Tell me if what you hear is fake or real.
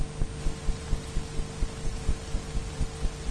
real